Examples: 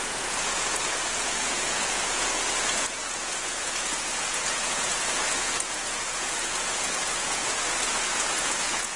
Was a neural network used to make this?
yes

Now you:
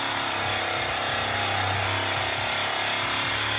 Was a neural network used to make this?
no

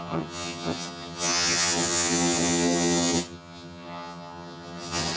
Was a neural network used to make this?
yes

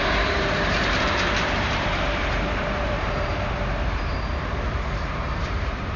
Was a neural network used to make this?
yes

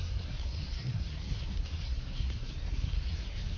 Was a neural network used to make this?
yes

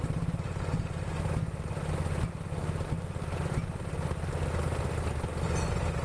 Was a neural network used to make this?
no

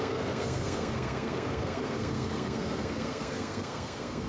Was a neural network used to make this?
yes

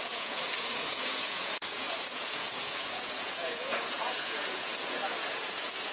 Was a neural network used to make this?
yes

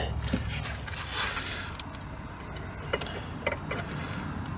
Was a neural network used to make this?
no